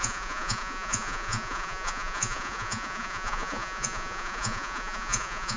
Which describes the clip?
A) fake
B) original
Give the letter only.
A